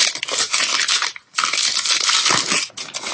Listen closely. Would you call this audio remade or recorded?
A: recorded